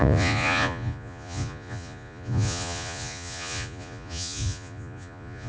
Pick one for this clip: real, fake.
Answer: fake